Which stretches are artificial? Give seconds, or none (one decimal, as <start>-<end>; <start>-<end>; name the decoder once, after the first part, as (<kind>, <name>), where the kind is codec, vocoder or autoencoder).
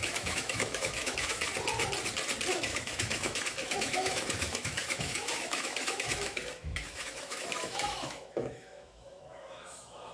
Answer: 0.0-1.5 (autoencoder, DAC-VAE); 2.5-10.1